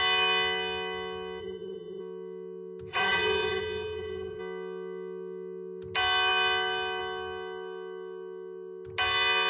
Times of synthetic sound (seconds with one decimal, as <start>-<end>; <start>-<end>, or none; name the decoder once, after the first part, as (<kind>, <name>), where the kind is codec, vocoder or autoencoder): 1.4-2.0 (vocoder, HiFi-GAN); 2.9-4.4